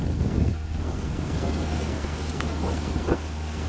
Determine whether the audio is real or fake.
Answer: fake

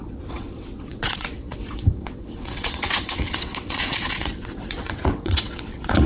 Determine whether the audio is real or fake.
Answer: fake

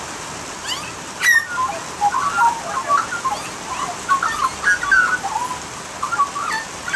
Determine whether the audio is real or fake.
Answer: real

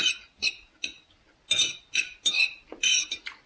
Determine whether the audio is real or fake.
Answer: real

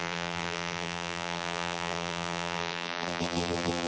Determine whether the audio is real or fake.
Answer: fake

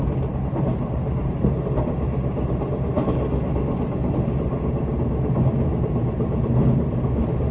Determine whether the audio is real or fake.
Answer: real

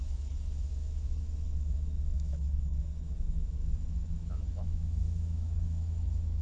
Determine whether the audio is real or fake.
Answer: fake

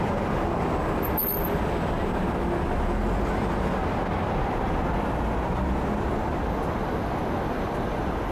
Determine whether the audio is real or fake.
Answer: real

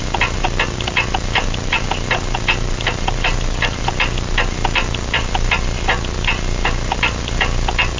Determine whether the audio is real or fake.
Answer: real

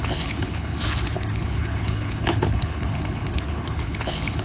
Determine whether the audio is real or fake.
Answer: fake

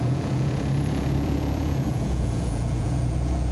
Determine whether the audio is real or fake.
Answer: fake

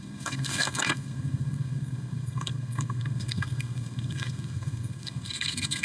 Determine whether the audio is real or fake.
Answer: fake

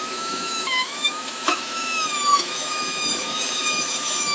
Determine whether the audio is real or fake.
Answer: fake